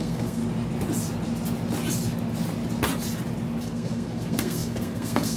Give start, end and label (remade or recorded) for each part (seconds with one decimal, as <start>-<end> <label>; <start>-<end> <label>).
0.0-0.4 remade; 0.4-3.6 recorded; 3.6-5.4 remade